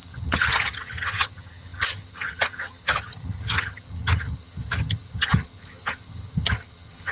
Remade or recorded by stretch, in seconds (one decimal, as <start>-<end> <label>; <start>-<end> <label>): 0.0-7.1 remade